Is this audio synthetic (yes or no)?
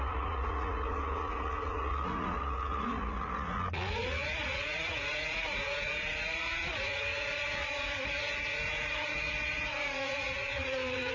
yes